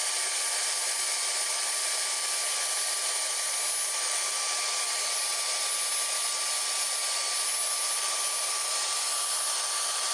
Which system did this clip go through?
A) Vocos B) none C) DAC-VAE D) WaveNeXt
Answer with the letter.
B